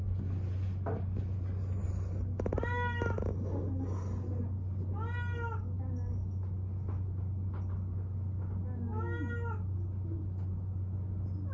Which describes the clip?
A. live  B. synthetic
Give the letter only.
A